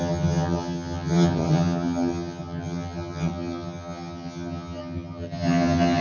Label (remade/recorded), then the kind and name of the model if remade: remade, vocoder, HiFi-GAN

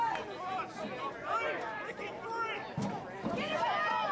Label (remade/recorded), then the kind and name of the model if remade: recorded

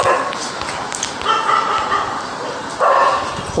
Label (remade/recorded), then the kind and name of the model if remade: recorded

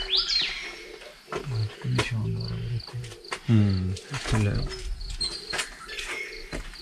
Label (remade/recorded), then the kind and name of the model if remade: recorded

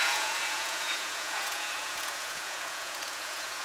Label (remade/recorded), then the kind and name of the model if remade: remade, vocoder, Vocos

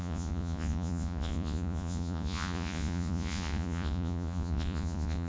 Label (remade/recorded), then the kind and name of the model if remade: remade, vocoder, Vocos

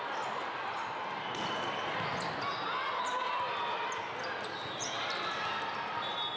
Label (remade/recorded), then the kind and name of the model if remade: recorded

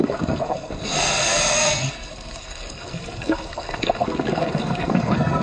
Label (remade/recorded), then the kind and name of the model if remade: remade, codec, SNAC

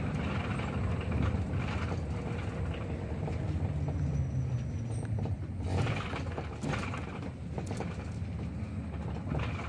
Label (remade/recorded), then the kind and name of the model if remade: recorded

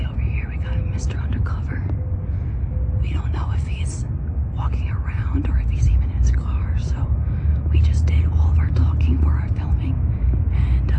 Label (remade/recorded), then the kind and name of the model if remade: recorded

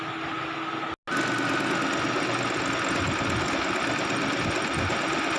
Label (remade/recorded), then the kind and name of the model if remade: recorded